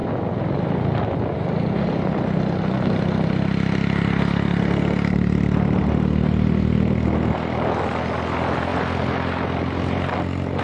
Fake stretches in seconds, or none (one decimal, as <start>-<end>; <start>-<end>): none